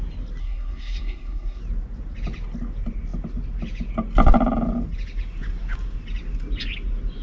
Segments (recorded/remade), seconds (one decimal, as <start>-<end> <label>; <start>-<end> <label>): 0.0-0.4 recorded; 0.4-1.6 remade; 1.6-7.2 recorded